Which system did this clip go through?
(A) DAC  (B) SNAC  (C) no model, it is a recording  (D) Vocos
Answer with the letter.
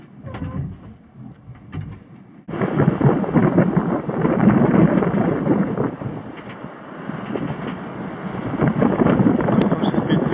C